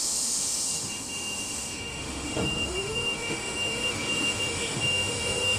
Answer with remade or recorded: remade